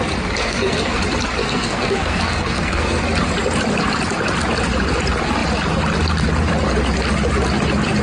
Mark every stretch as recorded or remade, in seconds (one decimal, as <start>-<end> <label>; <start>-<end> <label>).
0.0-0.4 recorded; 0.4-1.0 remade; 1.0-1.4 recorded; 1.4-3.0 remade; 3.0-8.0 recorded